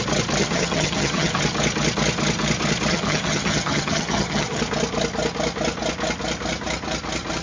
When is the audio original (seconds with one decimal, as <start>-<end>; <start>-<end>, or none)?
0.0-0.4; 1.4-2.9; 4.6-7.4